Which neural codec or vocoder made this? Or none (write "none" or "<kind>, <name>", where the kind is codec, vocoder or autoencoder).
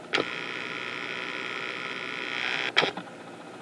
none